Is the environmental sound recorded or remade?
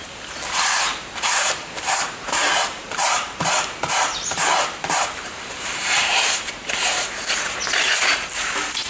remade